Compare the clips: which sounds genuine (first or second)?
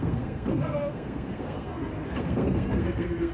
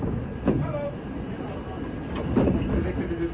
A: second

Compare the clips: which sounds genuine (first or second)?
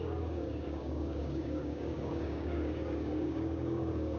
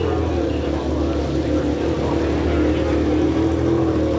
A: second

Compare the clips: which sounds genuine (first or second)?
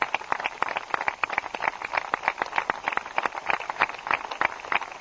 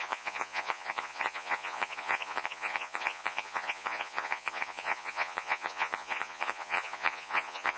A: first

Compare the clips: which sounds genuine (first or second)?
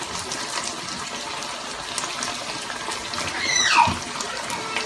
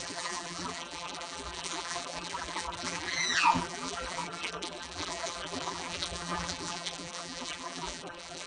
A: first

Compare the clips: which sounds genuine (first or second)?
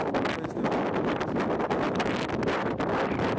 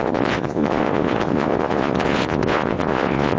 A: first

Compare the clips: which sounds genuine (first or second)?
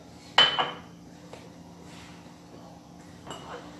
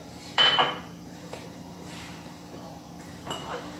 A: first